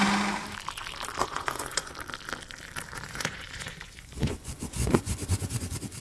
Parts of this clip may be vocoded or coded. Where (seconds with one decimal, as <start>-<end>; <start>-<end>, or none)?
1.2-1.9; 2.9-6.0